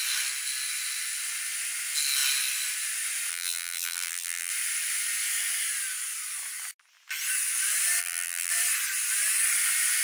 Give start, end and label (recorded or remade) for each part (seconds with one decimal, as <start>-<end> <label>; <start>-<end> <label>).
0.0-3.3 recorded; 3.3-4.5 remade; 4.5-8.0 recorded; 8.0-8.5 remade; 8.5-10.0 recorded

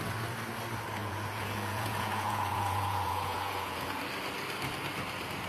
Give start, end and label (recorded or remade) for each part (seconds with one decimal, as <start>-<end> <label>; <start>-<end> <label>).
0.0-1.0 recorded; 1.0-4.0 remade; 4.0-5.5 recorded

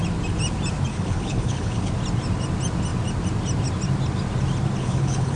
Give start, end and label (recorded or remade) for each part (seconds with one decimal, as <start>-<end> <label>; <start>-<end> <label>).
0.0-0.9 recorded; 0.9-1.9 remade; 1.9-4.8 recorded; 4.8-5.4 remade